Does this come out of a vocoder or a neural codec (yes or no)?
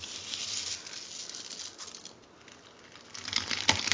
no